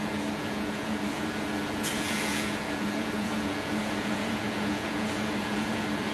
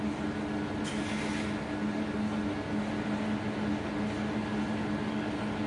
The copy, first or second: first